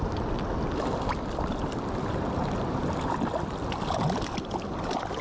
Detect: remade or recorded recorded